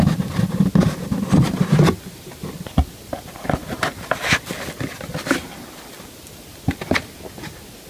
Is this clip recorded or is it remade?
recorded